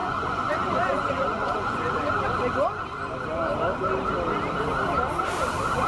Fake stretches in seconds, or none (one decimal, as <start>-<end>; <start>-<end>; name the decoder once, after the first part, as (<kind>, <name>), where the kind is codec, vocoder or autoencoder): 0.0-2.2 (vocoder, Vocos)